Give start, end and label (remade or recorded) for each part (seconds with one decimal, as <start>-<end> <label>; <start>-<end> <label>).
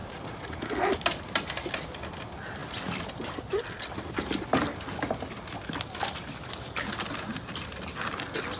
0.0-0.7 remade; 0.7-2.6 recorded; 2.6-6.9 remade; 6.9-8.6 recorded